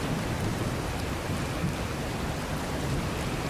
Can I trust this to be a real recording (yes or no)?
yes